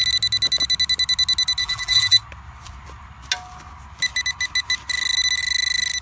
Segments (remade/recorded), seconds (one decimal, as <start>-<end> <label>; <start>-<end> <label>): 0.0-1.6 recorded; 1.6-2.2 remade; 2.2-6.0 recorded